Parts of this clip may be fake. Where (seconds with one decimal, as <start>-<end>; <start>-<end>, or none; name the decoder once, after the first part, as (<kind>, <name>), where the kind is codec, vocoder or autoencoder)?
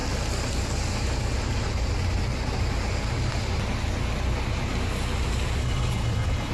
5.6-6.5 (codec, HILCodec)